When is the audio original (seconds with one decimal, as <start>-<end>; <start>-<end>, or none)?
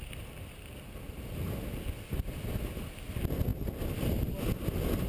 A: 0.0-5.1